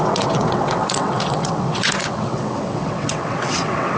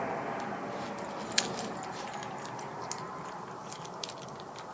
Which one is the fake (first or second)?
first